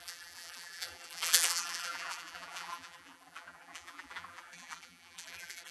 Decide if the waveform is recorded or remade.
remade